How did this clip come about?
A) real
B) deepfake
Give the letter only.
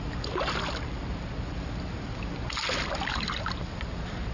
A